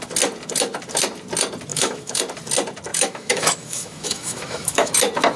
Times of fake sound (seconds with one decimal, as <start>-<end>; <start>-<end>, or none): 1.7-2.2; 2.9-4.9